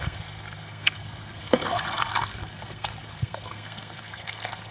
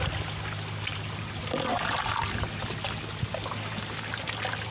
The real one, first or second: second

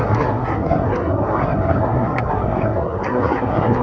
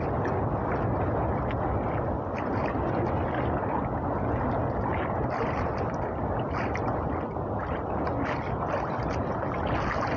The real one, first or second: second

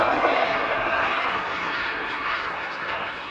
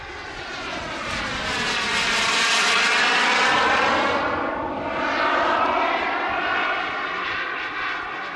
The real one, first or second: second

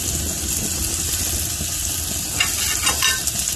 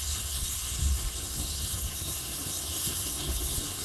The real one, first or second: first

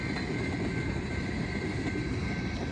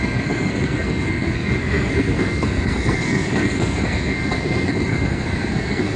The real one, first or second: first